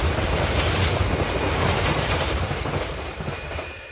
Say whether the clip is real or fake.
fake